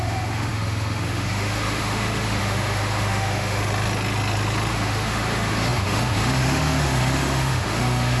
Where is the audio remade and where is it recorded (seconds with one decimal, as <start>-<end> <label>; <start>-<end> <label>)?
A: 0.0-3.6 remade; 3.6-4.7 recorded; 4.7-8.2 remade